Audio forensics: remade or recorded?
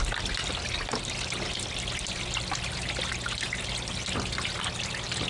recorded